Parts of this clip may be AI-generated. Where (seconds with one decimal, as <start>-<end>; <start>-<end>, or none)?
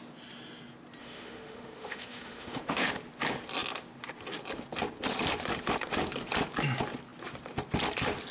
1.0-2.9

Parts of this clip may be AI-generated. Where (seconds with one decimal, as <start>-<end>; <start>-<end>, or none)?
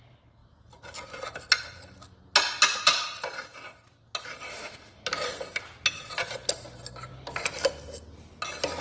4.5-5.0